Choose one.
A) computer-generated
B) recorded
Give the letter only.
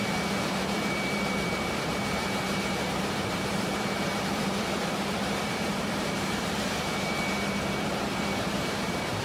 A